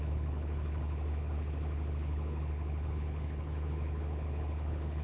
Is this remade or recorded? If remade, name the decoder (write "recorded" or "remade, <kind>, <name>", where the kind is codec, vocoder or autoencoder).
remade, codec, HILCodec